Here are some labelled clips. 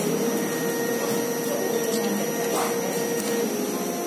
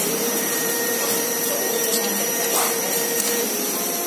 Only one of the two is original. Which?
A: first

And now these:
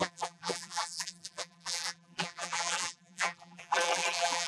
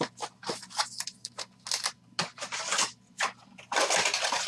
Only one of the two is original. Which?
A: second